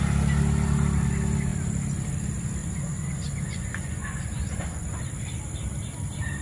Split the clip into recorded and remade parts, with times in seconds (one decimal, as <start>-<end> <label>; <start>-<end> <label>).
0.0-2.6 recorded; 2.6-5.0 remade; 5.0-6.4 recorded

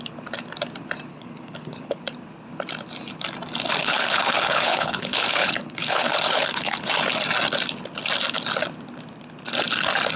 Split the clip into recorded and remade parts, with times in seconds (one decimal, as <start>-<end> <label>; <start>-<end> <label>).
0.0-1.1 recorded; 1.1-2.0 remade; 2.0-3.8 recorded; 3.8-6.9 remade; 6.9-10.2 recorded

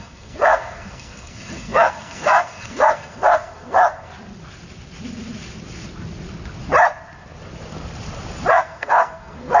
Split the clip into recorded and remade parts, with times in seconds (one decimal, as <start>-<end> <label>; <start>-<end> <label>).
0.0-4.1 remade; 4.1-8.5 recorded; 8.5-9.6 remade

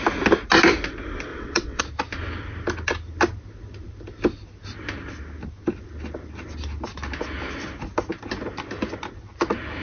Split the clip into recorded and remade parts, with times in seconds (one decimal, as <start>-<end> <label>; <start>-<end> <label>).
0.0-1.3 recorded; 1.3-1.8 remade; 1.8-9.8 recorded

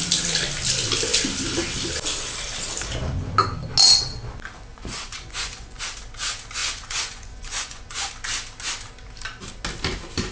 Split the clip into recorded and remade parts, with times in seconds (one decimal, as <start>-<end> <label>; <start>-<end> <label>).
0.0-4.7 recorded; 4.7-5.8 remade; 5.8-6.6 recorded; 6.6-8.1 remade; 8.1-10.3 recorded

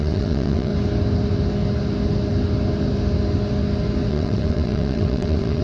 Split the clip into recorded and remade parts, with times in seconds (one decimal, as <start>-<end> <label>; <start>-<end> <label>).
0.0-0.7 remade; 0.7-4.1 recorded; 4.1-5.6 remade

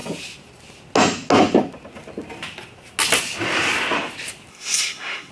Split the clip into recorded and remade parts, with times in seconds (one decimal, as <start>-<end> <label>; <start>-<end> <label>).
0.0-4.5 recorded; 4.5-5.3 remade